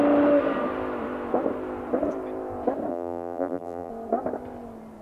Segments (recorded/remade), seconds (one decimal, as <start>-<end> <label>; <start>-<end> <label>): 0.0-2.9 recorded; 2.9-3.9 remade; 3.9-5.0 recorded